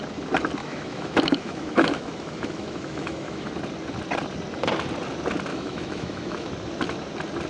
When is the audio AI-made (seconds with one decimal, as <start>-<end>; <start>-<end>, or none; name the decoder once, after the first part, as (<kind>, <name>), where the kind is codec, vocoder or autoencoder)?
0.6-3.5 (autoencoder, DAC-VAE); 5.5-6.5